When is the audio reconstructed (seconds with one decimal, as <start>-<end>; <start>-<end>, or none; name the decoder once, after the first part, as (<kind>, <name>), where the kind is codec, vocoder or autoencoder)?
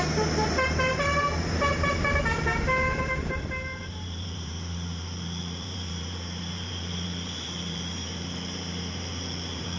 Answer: 0.0-9.8 (vocoder, BigVGAN v2)